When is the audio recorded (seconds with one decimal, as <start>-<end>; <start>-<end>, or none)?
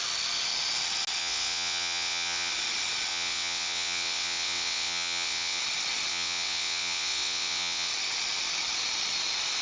0.0-1.2; 2.5-3.1; 5.6-6.1; 7.9-9.6